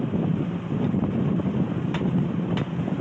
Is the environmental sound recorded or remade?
recorded